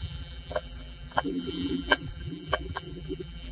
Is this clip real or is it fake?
fake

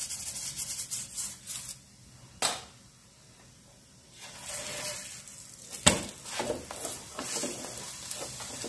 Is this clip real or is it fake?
real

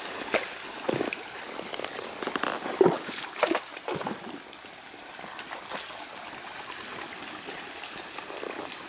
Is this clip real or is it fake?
real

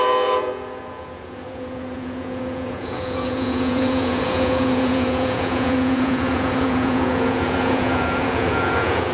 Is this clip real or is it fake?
fake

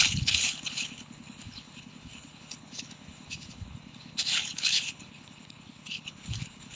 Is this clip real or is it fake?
fake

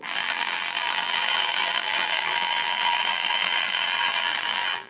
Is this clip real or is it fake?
fake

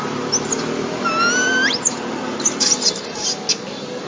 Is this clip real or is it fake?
real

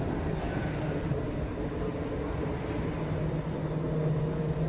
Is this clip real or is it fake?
real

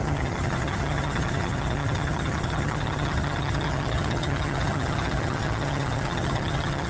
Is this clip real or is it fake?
fake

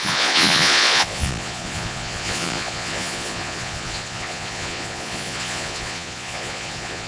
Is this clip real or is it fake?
fake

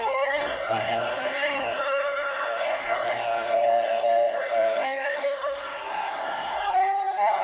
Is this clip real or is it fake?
fake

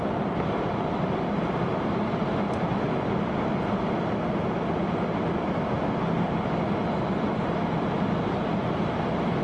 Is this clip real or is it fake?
real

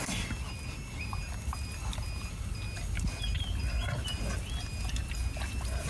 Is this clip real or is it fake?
real